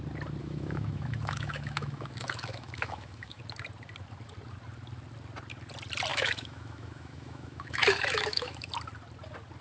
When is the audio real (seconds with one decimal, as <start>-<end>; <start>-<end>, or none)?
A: 0.0-0.4; 3.4-6.1; 8.7-9.6

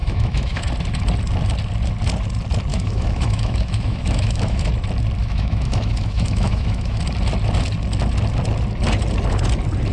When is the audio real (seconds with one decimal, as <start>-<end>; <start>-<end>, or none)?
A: 0.7-2.7; 4.7-5.2; 7.0-9.9

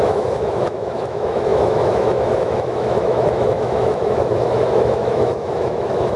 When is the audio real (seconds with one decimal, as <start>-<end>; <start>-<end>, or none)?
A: none

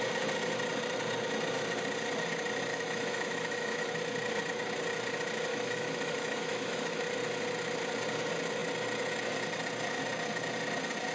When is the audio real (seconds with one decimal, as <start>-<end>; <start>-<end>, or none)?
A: 0.0-2.7; 3.9-5.5; 7.0-11.1